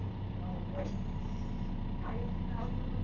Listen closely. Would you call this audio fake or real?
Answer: real